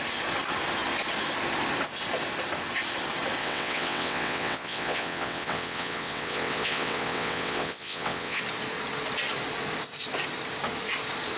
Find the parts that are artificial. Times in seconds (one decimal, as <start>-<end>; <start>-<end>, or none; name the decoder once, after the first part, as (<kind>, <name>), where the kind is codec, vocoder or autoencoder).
3.4-8.4 (vocoder, WaveNeXt)